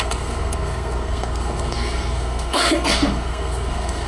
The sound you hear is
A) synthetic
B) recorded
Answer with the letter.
A